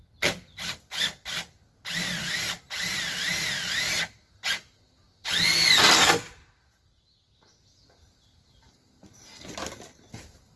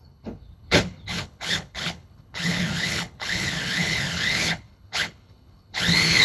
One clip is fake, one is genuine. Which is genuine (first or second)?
first